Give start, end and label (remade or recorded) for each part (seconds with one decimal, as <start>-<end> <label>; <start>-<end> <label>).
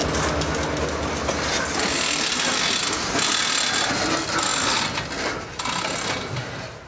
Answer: 0.0-6.9 recorded